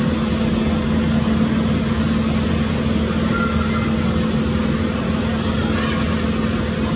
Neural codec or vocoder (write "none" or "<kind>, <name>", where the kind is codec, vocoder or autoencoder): none